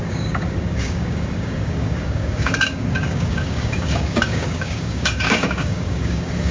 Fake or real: fake